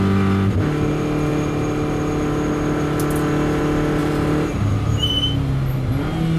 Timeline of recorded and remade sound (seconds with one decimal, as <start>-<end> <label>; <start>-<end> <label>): 0.0-4.0 recorded; 4.0-5.1 remade; 5.1-6.4 recorded